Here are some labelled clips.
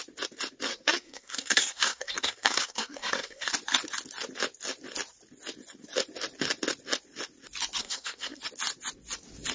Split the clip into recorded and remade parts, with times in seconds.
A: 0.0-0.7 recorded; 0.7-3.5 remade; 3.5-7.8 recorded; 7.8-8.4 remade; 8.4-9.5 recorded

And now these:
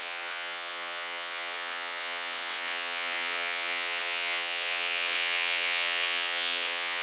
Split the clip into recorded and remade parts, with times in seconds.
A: 0.0-7.0 remade

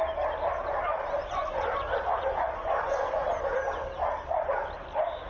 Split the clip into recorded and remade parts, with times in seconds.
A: 0.0-1.2 recorded; 1.2-3.3 remade; 3.3-5.3 recorded

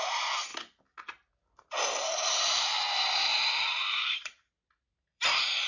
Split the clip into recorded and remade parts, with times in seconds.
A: 0.0-0.5 remade; 0.5-2.0 recorded; 2.0-3.3 remade; 3.3-4.0 recorded; 4.0-5.7 remade

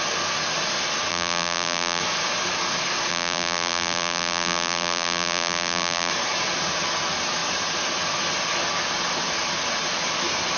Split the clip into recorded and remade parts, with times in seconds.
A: 0.0-1.1 recorded; 1.1-2.0 remade; 2.0-3.1 recorded; 3.1-6.1 remade; 6.1-10.6 recorded

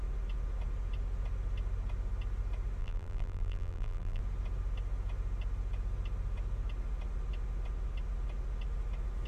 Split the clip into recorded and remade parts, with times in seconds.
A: 0.0-2.8 recorded; 2.8-4.2 remade; 4.2-9.3 recorded

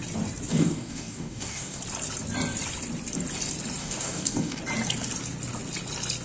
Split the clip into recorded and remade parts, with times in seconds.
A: 0.0-0.5 recorded; 0.5-1.8 remade; 1.8-3.8 recorded; 3.8-4.6 remade; 4.6-6.2 recorded

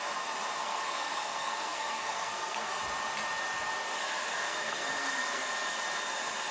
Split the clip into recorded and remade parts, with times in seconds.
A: 0.0-0.6 recorded; 0.6-2.8 remade; 2.8-4.3 recorded; 4.3-5.5 remade; 5.5-6.5 recorded